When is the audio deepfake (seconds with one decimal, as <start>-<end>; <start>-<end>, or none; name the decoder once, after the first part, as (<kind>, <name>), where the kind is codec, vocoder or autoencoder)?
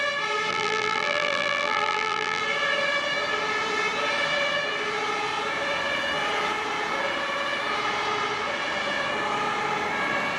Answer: 0.5-2.4 (vocoder, BigVGAN v2)